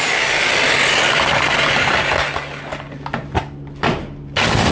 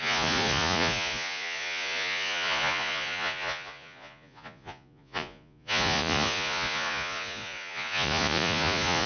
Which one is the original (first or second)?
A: first